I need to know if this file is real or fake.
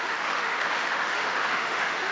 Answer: fake